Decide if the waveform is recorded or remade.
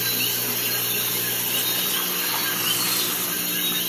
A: recorded